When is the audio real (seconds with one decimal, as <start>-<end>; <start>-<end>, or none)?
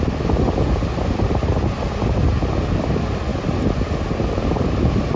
0.0-5.2